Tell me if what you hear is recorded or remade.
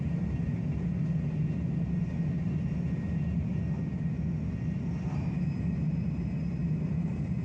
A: recorded